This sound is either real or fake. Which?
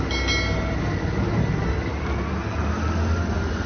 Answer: real